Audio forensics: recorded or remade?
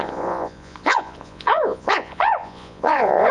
remade